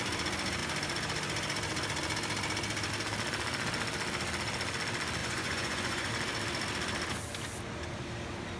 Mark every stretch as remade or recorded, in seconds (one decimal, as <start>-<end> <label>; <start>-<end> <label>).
0.0-5.2 recorded; 5.2-6.1 remade; 6.1-8.6 recorded